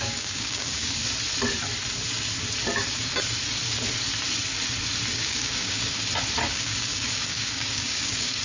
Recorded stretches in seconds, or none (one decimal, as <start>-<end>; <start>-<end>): 1.0-5.1; 6.0-6.5

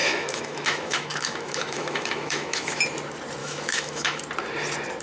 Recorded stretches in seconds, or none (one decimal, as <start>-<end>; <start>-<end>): 2.8-3.4; 4.2-5.0

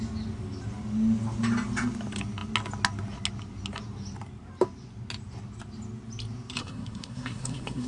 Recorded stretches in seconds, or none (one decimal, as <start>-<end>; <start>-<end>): 0.0-6.6

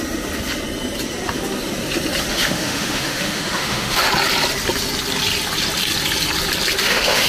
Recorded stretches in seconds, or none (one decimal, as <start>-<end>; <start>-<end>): 0.0-2.3; 4.1-6.8

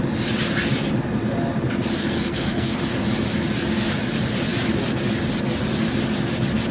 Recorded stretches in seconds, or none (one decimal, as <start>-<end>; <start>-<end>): 0.0-2.0; 2.8-6.7